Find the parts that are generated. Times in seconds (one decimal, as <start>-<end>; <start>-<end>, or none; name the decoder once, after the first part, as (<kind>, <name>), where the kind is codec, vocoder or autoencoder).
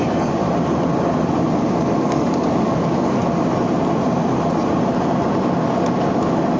0.0-0.4 (codec, DAC); 2.0-3.2